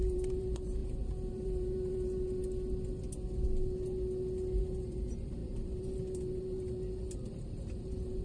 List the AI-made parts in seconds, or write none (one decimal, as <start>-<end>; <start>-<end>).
0.0-2.4; 4.6-8.2